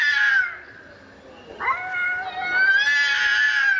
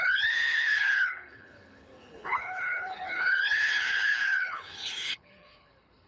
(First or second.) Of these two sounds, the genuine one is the first